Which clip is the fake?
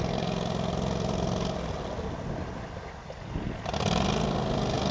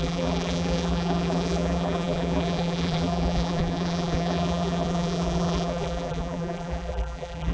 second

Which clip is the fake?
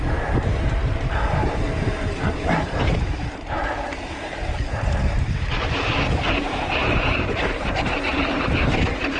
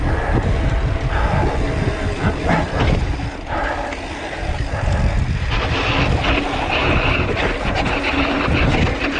first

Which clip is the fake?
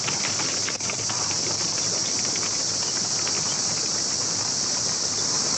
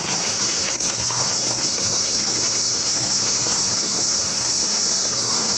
second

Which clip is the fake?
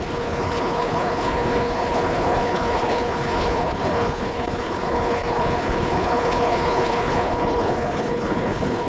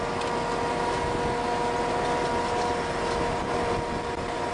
first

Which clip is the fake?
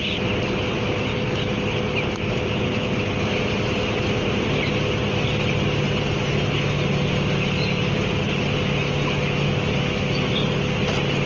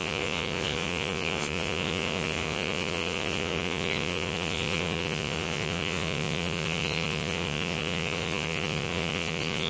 second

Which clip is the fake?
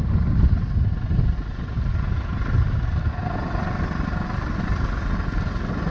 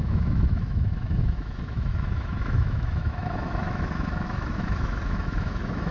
second